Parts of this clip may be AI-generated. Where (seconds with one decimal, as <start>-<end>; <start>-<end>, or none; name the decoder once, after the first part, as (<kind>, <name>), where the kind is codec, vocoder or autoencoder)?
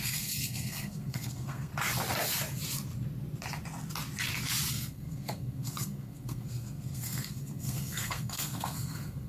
0.0-1.7 (codec, SNAC); 4.7-9.3